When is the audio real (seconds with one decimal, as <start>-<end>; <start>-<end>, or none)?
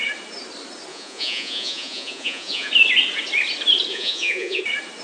0.0-0.9; 2.7-3.9; 4.6-5.0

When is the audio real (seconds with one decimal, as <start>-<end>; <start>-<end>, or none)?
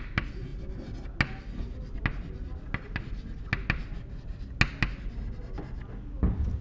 0.0-6.6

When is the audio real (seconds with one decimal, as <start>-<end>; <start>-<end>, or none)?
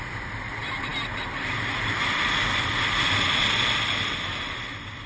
0.0-5.1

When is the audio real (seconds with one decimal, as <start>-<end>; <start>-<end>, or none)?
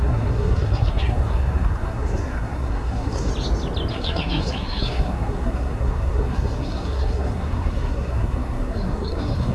3.3-3.9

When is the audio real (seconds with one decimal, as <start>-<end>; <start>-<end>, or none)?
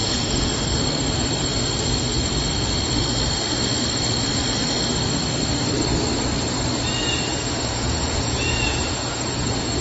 0.5-7.7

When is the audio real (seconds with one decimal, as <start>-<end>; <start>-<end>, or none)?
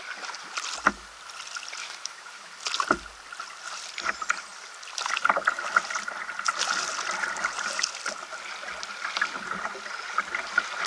0.0-1.8; 2.5-10.9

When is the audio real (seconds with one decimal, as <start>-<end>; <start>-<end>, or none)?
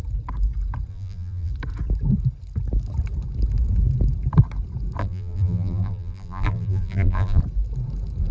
0.0-0.9; 1.5-5.0; 7.4-8.3